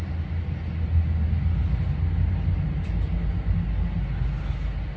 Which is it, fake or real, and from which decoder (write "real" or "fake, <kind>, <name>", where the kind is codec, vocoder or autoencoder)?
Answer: real